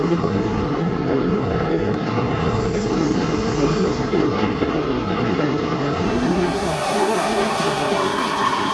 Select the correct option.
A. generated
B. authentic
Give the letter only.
A